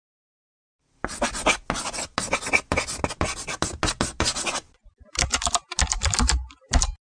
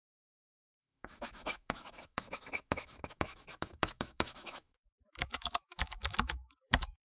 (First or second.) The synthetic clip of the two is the second